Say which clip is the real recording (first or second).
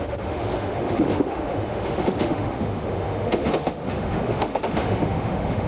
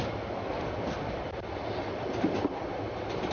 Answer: second